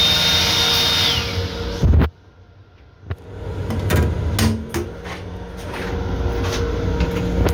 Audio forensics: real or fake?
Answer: real